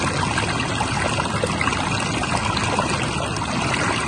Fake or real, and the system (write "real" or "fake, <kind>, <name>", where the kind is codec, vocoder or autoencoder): real